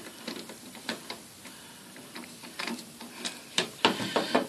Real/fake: fake